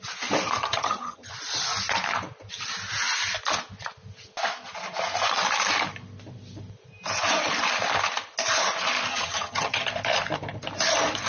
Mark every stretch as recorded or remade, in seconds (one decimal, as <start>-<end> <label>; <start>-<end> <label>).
0.0-0.6 recorded; 0.6-1.3 remade; 1.3-9.1 recorded; 9.1-9.9 remade; 9.9-11.3 recorded